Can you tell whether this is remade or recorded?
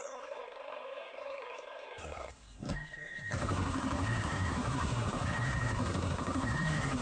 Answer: remade